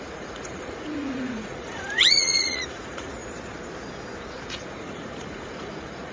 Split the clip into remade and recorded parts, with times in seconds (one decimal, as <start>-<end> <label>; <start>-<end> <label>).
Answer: 0.0-3.2 remade; 3.2-4.2 recorded; 4.2-6.1 remade